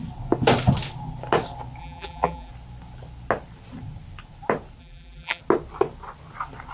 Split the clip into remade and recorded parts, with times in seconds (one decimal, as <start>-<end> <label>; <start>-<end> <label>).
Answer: 0.0-1.8 recorded; 1.8-2.5 remade; 2.5-4.8 recorded; 4.8-5.4 remade; 5.4-6.7 recorded